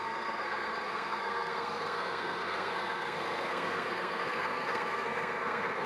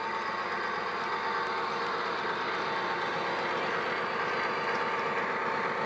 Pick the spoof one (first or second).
first